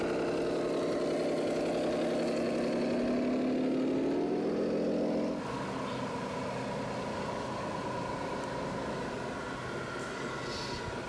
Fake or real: real